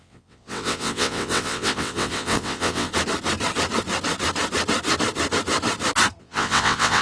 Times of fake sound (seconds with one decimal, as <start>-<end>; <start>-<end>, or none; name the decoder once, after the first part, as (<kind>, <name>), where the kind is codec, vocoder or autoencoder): 0.0-2.9 (vocoder, WaveNeXt); 6.2-7.0